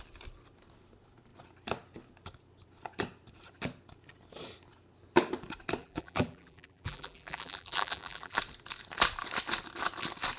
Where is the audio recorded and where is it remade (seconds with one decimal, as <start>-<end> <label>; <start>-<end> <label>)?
0.0-5.8 recorded; 5.8-8.4 remade; 8.4-10.4 recorded